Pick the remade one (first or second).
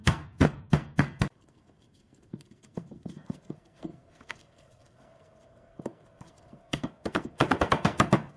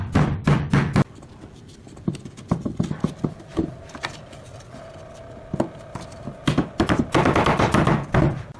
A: first